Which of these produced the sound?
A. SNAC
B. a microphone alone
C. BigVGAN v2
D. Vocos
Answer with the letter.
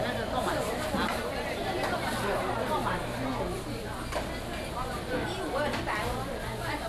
B